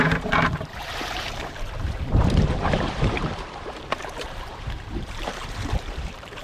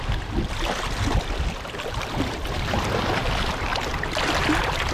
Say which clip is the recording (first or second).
second